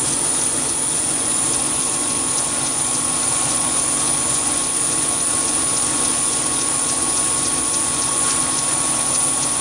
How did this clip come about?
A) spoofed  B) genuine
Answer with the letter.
A